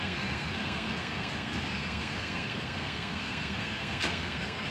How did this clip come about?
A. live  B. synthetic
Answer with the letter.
B